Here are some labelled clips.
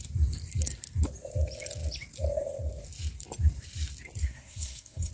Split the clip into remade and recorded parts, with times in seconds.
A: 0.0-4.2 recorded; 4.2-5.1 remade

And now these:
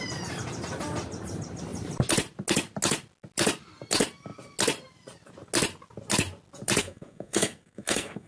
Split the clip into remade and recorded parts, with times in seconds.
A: 0.0-6.8 recorded; 6.8-8.3 remade

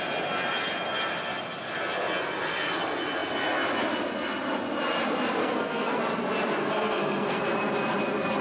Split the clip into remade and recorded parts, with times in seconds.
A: 0.0-5.4 recorded; 5.4-6.0 remade; 6.0-6.6 recorded; 6.6-7.4 remade; 7.4-8.4 recorded

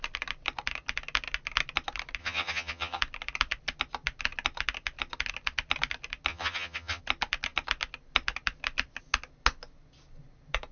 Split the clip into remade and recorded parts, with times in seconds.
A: 0.0-2.2 recorded; 2.2-3.0 remade; 3.0-6.3 recorded; 6.3-7.0 remade; 7.0-10.7 recorded

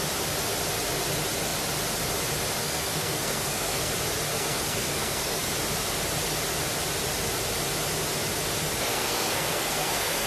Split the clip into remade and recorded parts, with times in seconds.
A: 0.0-2.6 recorded; 2.6-3.9 remade; 3.9-4.3 recorded; 4.3-5.5 remade; 5.5-8.9 recorded; 8.9-10.3 remade